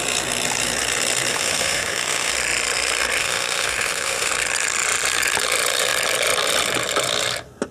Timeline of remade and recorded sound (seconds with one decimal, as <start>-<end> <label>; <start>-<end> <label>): 0.0-1.3 recorded; 1.3-2.3 remade; 2.3-3.2 recorded; 3.2-4.3 remade; 4.3-7.7 recorded